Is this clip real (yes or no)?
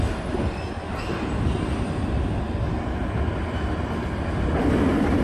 yes